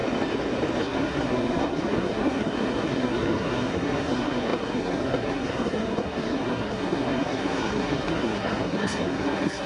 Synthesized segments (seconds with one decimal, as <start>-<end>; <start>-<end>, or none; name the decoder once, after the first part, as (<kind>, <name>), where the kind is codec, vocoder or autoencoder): 0.8-9.7 (codec, SNAC)